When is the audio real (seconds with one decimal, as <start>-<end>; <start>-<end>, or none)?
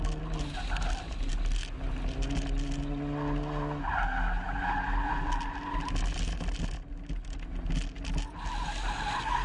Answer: 0.0-9.4